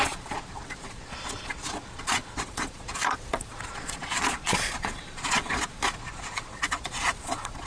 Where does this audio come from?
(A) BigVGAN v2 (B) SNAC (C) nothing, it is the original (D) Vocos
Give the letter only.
D